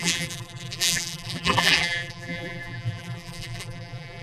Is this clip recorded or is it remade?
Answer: remade